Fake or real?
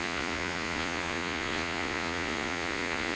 fake